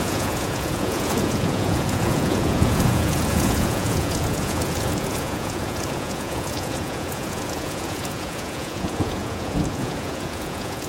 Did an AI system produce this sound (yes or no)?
yes